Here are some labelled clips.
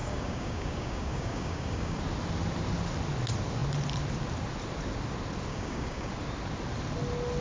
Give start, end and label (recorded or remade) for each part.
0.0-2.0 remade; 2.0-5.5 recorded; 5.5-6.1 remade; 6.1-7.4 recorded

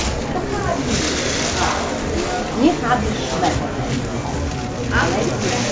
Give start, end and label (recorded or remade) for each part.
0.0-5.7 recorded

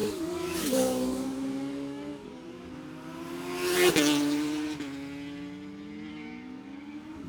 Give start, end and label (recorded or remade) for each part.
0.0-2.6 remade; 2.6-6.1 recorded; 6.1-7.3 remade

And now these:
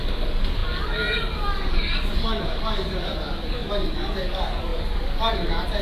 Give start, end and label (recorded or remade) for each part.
0.0-5.8 remade

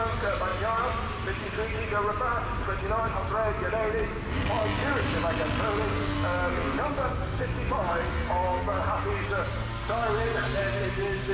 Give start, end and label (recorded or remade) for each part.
0.0-4.6 recorded; 4.6-5.2 remade; 5.2-11.3 recorded

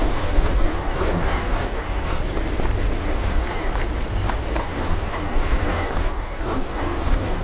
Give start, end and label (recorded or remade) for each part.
0.0-2.2 remade; 2.2-3.0 recorded; 3.0-3.7 remade; 3.7-4.6 recorded; 4.6-7.4 remade

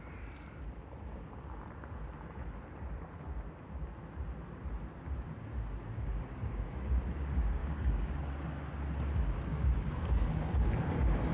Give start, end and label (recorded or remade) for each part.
0.0-7.6 recorded; 7.6-8.2 remade; 8.2-9.5 recorded; 9.5-10.1 remade; 10.1-11.3 recorded